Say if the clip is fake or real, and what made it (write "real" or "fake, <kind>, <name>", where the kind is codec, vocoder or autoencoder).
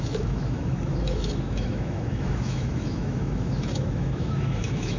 fake, autoencoder, DAC-VAE